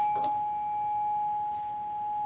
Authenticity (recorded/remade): recorded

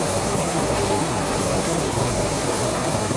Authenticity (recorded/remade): remade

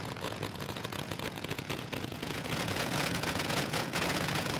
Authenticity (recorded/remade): remade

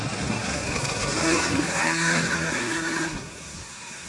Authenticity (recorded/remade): remade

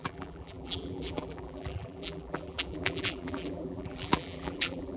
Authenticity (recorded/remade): remade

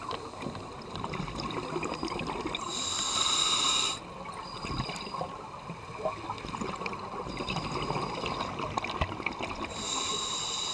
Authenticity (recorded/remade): recorded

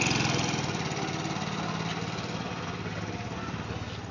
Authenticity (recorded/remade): recorded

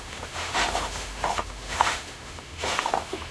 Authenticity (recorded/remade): remade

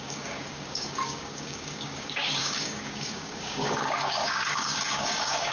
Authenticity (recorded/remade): remade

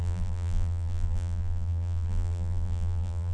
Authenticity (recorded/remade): remade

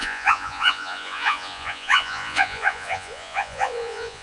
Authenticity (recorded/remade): remade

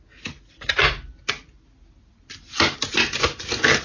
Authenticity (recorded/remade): recorded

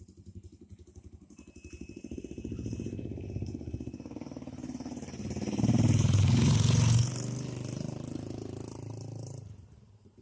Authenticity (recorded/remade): remade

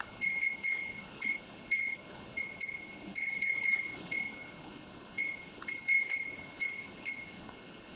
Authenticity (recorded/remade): remade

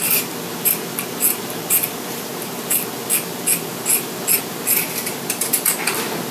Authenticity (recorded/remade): recorded